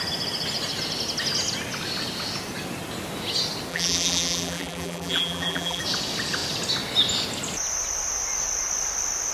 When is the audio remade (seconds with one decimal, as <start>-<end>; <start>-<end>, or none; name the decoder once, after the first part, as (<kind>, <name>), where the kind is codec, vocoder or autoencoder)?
3.7-5.8 (vocoder, BigVGAN v2)